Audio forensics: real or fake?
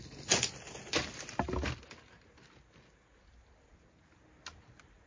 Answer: real